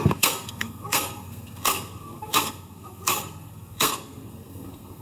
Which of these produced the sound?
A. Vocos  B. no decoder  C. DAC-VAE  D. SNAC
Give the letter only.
D